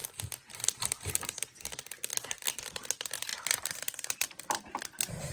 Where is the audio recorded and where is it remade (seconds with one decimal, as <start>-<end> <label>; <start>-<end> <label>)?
0.0-1.1 remade; 1.1-2.1 recorded; 2.1-2.6 remade; 2.6-3.3 recorded; 3.3-4.8 remade; 4.8-5.3 recorded